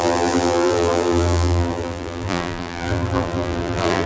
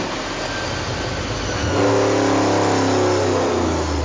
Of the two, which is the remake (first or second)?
first